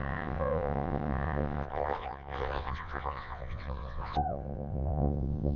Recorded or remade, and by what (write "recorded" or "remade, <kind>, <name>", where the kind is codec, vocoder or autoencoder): remade, vocoder, WaveNeXt